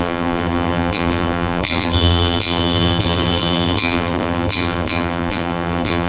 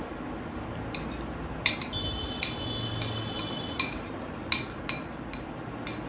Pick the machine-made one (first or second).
first